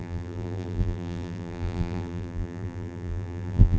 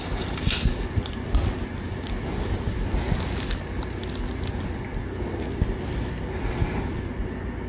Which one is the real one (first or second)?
second